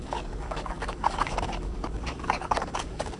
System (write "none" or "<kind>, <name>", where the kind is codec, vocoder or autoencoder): codec, DAC